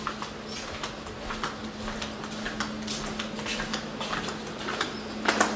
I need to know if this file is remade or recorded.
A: recorded